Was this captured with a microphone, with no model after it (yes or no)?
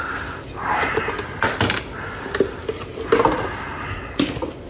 yes